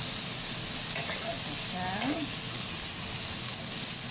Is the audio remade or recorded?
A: recorded